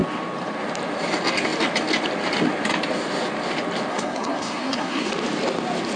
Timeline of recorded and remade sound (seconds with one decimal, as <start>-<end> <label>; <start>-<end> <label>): 0.0-3.9 recorded; 3.9-5.1 remade; 5.1-6.0 recorded